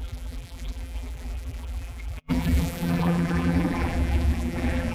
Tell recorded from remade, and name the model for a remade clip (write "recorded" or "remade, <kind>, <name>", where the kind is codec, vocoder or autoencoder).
remade, vocoder, BigVGAN v2